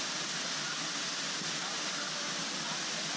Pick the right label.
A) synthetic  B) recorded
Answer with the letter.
B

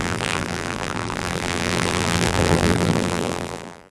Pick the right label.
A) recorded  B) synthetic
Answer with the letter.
B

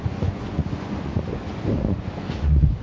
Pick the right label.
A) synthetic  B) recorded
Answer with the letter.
A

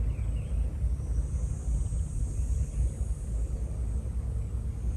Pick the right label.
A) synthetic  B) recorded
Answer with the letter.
B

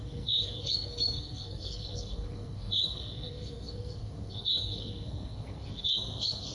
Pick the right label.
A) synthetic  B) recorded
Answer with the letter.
A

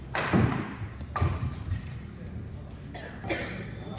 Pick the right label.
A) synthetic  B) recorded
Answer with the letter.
B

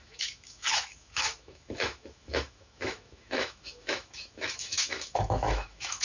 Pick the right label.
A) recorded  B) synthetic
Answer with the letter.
B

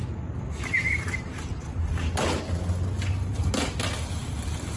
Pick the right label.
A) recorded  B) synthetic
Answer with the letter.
A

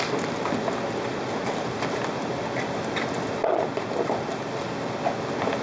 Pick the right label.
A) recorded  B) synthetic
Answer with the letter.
A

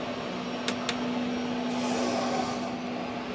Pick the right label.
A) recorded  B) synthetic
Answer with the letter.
A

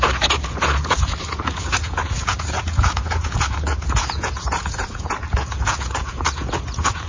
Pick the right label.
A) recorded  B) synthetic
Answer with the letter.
B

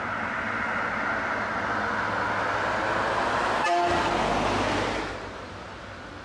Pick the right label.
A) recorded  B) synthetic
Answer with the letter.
A